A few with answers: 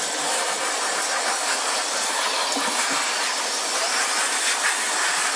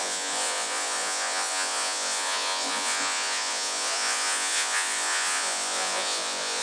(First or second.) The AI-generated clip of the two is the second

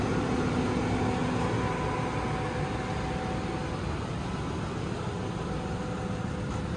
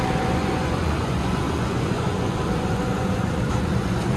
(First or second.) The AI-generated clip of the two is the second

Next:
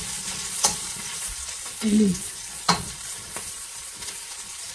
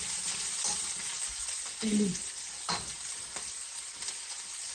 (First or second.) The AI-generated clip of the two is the first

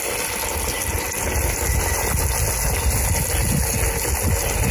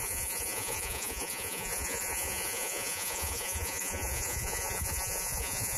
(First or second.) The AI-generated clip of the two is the second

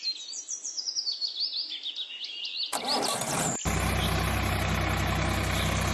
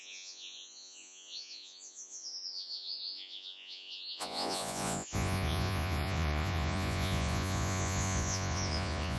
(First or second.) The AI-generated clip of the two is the second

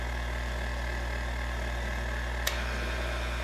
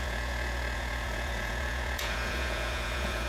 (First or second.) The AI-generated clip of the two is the second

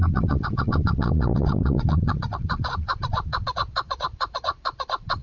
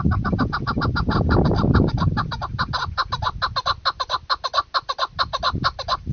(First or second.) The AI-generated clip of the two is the first